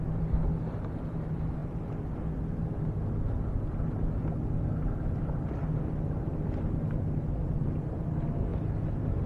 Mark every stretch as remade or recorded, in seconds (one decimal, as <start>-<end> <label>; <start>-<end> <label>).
0.0-9.3 recorded